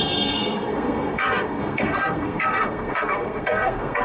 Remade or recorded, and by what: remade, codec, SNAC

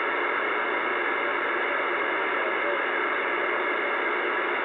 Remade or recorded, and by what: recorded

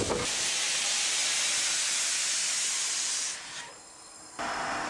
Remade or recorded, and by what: recorded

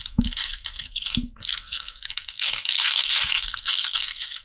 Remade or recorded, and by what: remade, codec, SNAC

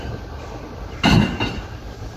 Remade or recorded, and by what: recorded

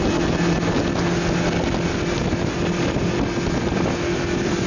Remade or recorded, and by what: recorded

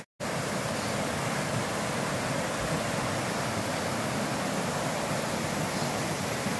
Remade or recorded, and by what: recorded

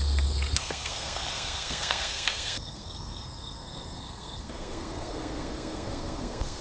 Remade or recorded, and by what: remade, codec, SNAC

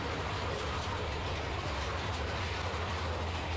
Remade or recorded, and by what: recorded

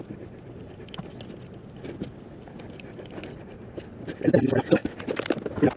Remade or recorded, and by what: recorded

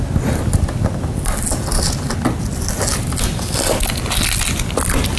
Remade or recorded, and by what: recorded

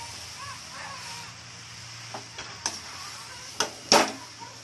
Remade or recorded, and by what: recorded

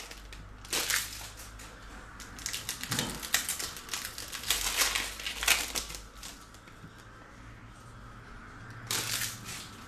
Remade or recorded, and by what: recorded